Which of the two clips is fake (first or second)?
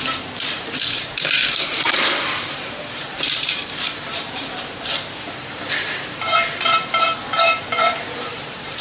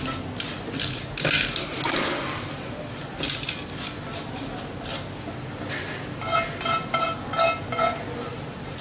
first